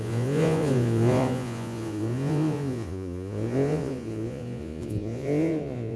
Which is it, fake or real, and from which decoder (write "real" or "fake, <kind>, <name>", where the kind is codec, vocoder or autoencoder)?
fake, vocoder, Vocos